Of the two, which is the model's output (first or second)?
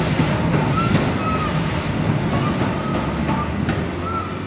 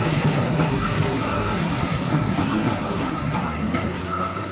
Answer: second